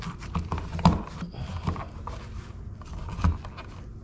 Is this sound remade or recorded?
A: recorded